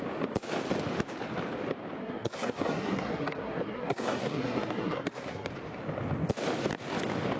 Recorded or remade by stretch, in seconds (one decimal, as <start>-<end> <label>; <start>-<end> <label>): 0.0-2.0 recorded; 2.0-5.5 remade; 5.5-7.4 recorded

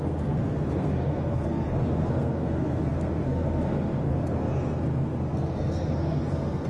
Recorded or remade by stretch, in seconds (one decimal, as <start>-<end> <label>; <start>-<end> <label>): 0.0-6.7 remade